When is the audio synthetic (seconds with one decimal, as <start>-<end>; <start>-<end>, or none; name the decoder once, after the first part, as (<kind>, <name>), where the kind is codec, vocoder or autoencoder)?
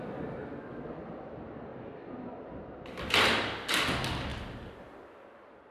none